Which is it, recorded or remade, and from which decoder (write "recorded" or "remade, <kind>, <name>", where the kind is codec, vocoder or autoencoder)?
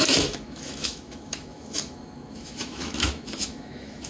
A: remade, autoencoder, DAC-VAE